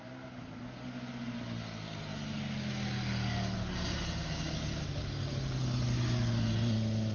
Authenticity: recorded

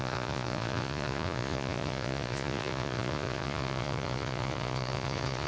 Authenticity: remade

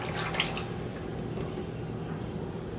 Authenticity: recorded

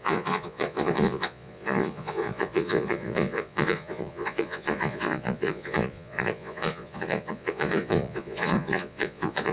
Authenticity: remade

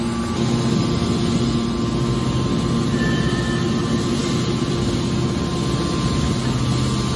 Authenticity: recorded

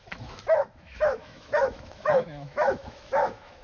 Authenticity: remade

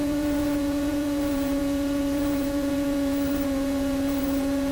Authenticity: remade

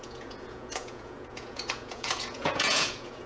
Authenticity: remade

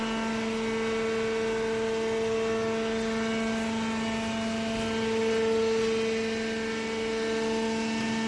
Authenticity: recorded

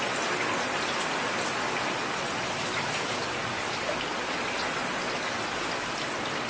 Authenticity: recorded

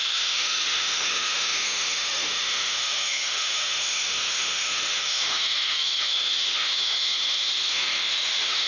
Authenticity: remade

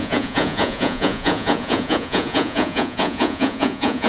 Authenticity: remade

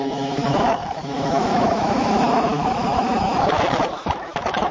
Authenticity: remade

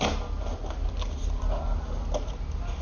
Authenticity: recorded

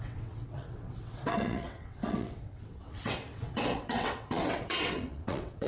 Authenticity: remade